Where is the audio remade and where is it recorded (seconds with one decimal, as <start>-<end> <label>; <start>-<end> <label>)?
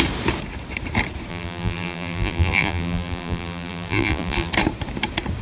0.0-1.3 recorded; 1.3-4.5 remade; 4.5-5.4 recorded